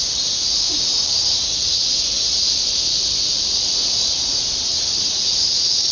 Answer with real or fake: fake